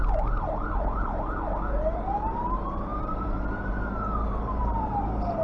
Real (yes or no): no